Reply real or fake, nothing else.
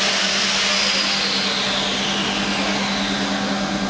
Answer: real